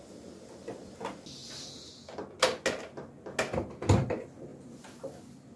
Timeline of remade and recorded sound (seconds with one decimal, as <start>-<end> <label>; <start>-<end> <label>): 0.0-5.6 recorded